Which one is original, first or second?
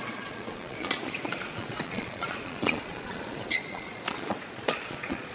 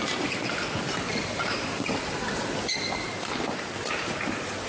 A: second